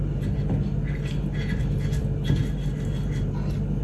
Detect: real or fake real